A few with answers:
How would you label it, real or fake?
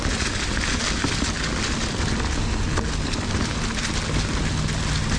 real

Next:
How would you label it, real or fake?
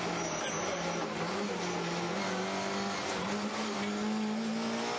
real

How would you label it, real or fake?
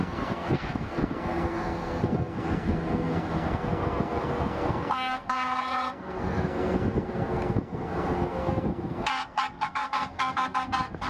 fake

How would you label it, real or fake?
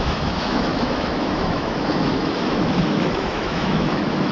fake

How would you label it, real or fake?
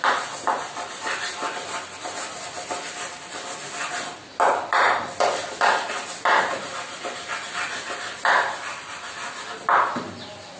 real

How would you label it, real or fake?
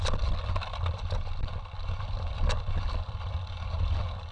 real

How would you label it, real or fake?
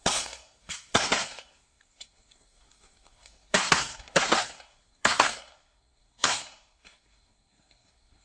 fake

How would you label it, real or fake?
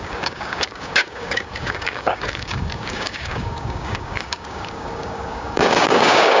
fake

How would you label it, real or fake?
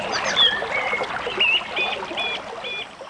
real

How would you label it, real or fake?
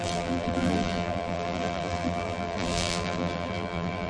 fake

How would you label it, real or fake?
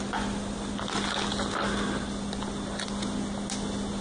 real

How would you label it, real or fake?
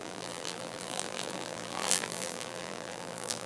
fake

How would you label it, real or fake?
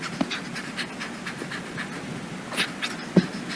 real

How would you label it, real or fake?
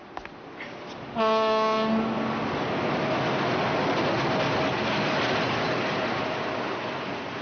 real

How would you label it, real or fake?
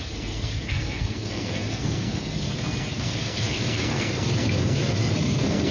fake